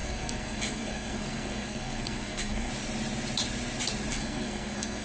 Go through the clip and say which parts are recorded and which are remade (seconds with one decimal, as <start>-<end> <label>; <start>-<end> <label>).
0.0-2.7 remade; 2.7-4.1 recorded; 4.1-5.0 remade